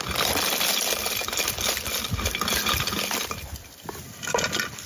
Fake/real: real